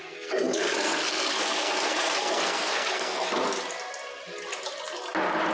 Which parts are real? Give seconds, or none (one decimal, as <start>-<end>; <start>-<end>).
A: 3.3-5.5